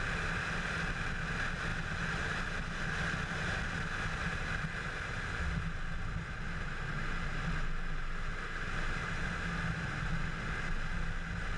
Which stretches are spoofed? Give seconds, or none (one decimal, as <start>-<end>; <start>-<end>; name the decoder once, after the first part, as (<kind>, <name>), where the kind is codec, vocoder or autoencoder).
none